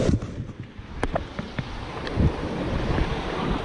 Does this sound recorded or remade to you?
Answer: remade